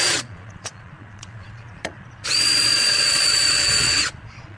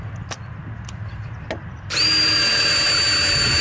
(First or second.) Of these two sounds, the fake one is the first